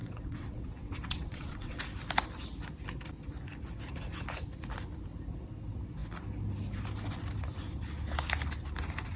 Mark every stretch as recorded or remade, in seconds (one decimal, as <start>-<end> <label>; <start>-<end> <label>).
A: 0.0-1.8 remade; 1.8-9.2 recorded